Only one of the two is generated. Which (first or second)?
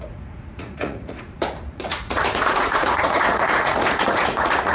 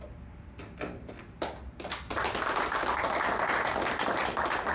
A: first